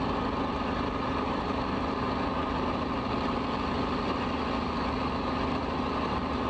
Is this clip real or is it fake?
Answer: real